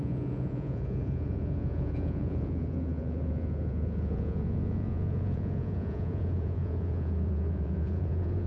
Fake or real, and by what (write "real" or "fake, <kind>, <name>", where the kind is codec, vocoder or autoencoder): fake, vocoder, Vocos